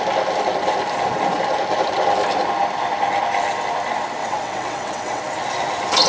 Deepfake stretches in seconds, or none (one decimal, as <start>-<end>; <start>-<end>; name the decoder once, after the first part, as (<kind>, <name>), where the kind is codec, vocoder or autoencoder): 4.2-5.2 (vocoder, WaveNeXt)